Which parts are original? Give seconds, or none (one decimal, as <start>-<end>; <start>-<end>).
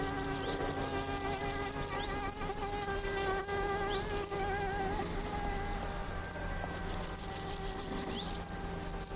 0.0-1.4; 2.6-6.0; 8.1-9.2